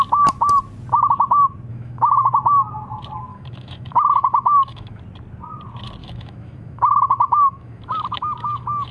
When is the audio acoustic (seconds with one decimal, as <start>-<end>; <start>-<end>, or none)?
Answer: 0.0-1.7; 2.3-3.3; 5.0-6.0